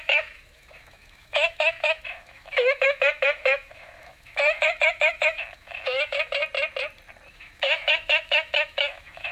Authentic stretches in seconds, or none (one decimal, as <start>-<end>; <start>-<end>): 6.4-7.3